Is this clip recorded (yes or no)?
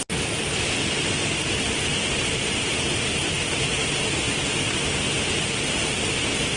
yes